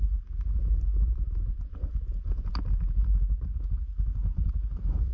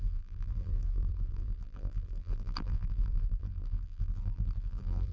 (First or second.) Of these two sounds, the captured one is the first